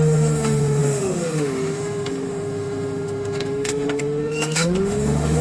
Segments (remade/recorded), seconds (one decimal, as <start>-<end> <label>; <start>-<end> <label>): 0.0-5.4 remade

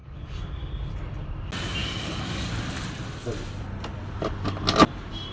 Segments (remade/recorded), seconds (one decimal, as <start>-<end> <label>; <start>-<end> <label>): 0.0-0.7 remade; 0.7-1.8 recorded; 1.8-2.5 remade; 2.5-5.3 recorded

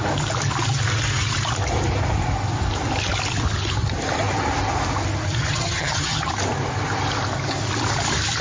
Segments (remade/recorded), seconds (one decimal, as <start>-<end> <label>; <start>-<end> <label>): 0.0-5.4 recorded; 5.4-6.3 remade; 6.3-8.4 recorded

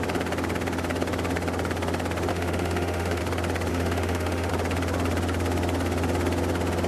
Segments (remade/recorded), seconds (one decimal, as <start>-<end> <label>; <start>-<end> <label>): 0.0-2.3 recorded; 2.3-3.2 remade; 3.2-3.7 recorded; 3.7-4.5 remade; 4.5-6.9 recorded

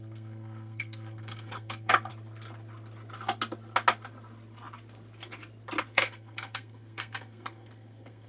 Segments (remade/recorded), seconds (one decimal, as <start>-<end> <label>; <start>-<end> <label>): 0.0-2.1 remade; 2.1-5.8 recorded; 5.8-8.3 remade